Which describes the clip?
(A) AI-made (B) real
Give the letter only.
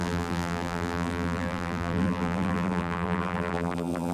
A